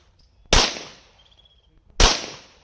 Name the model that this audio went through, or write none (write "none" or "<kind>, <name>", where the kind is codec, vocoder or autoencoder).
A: none